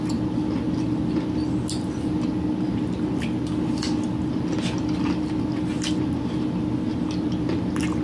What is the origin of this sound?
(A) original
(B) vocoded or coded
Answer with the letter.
A